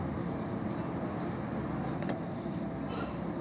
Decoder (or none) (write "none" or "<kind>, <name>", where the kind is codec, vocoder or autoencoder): none